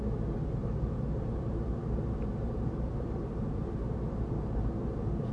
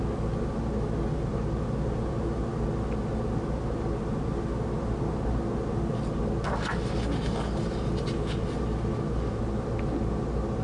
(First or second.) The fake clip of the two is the first